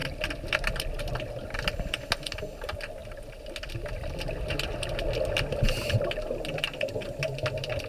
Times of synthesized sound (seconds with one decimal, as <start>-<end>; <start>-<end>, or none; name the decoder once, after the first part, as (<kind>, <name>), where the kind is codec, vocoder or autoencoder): none